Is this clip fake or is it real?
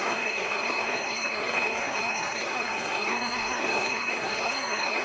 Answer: fake